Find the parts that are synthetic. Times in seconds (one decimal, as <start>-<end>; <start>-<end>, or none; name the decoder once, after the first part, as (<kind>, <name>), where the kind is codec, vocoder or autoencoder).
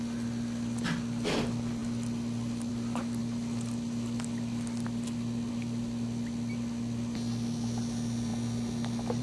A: none